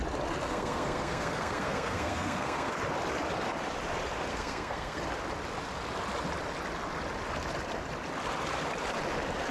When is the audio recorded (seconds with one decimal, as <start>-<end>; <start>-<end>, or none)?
0.0-0.5; 2.7-4.3; 5.0-9.5